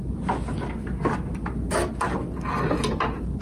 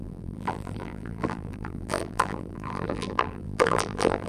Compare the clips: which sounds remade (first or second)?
second